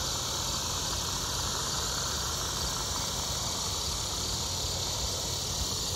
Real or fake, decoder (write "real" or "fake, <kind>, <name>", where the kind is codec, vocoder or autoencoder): fake, vocoder, BigVGAN v2